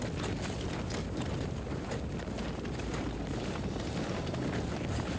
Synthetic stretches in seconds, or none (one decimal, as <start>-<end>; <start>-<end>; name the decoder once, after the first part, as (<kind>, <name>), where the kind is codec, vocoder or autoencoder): 1.0-4.1 (vocoder, BigVGAN v2)